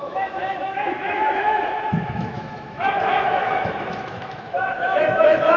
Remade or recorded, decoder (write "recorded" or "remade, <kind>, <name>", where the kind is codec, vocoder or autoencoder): remade, autoencoder, DAC-VAE